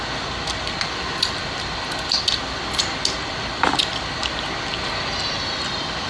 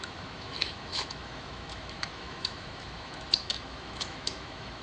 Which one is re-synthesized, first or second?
second